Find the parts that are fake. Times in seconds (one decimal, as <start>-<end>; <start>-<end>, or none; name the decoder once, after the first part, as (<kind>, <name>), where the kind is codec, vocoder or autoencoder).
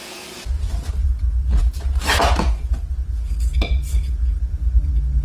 none